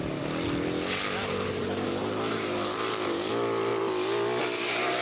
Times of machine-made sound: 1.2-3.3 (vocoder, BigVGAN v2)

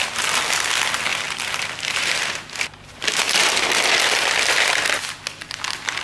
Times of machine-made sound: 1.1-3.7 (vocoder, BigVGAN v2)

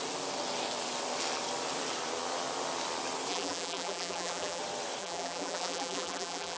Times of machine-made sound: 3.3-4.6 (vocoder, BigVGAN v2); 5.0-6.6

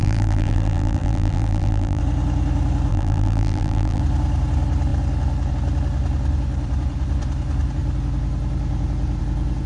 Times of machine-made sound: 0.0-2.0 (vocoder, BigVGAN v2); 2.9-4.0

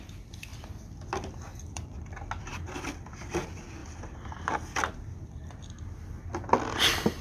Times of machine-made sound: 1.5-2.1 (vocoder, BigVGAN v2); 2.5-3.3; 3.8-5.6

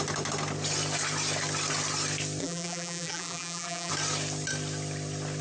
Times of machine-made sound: 2.4-3.9 (vocoder, BigVGAN v2)